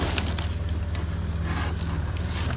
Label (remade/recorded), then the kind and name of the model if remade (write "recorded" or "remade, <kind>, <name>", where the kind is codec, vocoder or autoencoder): recorded